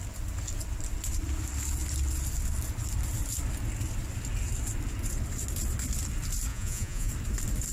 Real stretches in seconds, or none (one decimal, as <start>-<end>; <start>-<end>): 0.0-6.5; 7.1-7.7